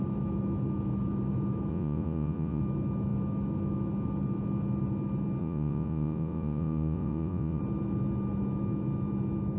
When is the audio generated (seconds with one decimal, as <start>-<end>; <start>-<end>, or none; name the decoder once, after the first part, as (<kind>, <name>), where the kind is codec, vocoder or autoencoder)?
1.7-2.6 (vocoder, Vocos); 5.4-7.6

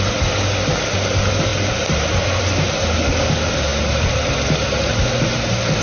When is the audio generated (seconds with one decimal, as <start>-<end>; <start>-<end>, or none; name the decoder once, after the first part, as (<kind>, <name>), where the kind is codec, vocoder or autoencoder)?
none

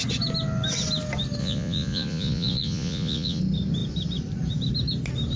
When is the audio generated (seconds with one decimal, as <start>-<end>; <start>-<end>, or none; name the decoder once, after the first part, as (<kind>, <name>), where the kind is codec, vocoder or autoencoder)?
1.4-3.4 (vocoder, Vocos)